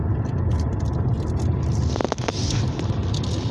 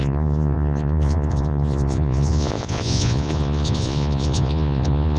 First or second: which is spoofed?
second